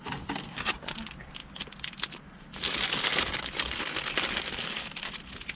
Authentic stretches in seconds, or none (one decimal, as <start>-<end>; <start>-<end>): 0.0-5.6